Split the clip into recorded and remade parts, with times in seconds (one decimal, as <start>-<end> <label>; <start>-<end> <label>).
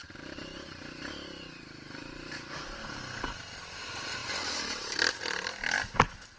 0.0-6.4 remade